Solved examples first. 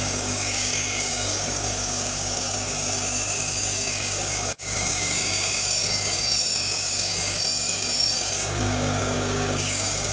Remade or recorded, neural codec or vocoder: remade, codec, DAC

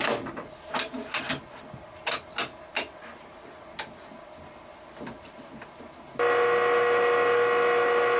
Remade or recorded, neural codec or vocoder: recorded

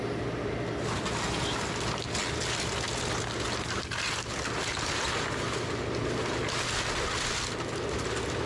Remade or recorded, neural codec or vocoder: recorded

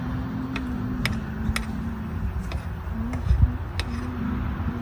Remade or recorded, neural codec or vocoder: recorded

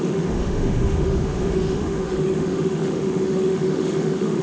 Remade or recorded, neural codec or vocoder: remade, autoencoder, DAC-VAE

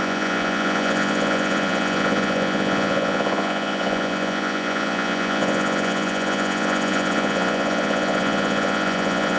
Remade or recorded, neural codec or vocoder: remade, vocoder, Vocos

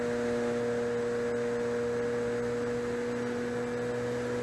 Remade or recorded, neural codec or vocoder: recorded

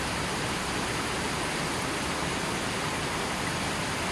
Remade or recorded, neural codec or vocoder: recorded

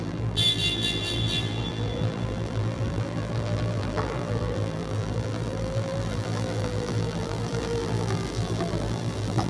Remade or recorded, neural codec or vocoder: remade, vocoder, BigVGAN v2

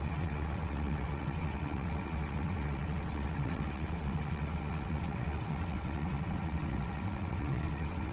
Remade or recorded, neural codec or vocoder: remade, vocoder, WaveNeXt